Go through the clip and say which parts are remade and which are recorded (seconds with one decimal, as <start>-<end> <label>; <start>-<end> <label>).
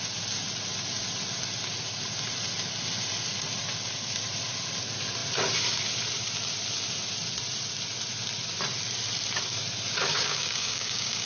0.0-10.1 recorded; 10.1-11.3 remade